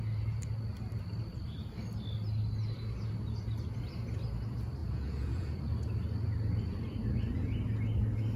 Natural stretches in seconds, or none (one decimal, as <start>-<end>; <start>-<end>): 0.0-4.8; 5.6-8.4